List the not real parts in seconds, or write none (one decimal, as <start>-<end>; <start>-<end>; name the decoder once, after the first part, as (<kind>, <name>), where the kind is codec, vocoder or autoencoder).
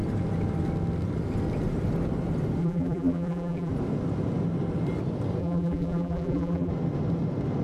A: 2.6-3.7 (vocoder, BigVGAN v2); 5.4-6.7